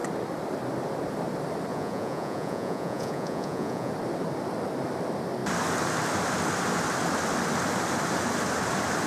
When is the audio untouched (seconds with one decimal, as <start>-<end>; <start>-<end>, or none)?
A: 0.0-1.7; 3.9-9.1